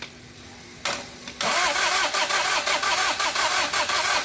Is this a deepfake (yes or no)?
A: no